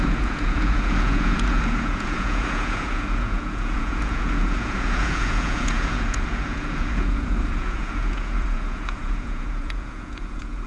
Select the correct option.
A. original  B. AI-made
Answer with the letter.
B